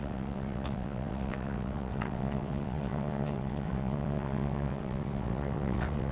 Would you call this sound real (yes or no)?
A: no